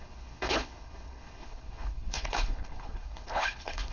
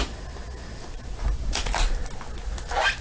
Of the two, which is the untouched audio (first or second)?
second